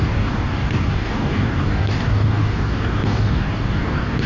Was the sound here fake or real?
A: fake